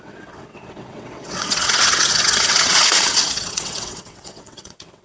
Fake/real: fake